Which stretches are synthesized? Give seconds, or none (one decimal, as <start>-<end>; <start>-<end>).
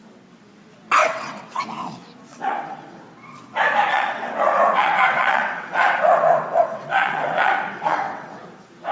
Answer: 1.0-1.6; 2.3-3.0; 3.9-8.4